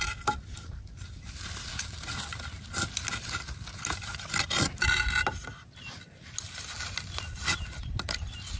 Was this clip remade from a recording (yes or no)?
no